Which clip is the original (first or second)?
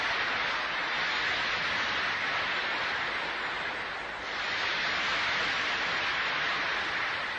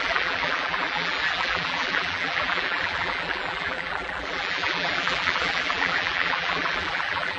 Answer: first